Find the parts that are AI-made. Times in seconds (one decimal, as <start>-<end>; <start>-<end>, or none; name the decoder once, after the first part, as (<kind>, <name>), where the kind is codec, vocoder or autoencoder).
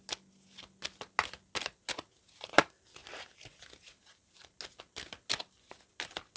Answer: none